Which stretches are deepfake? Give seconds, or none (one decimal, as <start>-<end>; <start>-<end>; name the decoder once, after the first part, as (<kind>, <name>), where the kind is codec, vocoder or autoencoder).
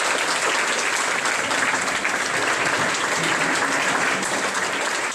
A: none